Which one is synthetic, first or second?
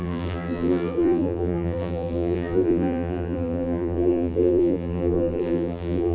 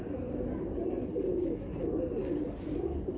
first